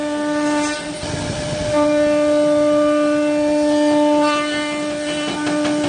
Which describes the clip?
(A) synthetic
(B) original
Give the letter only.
B